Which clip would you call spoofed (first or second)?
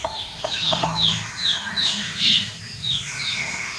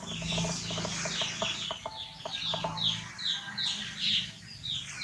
first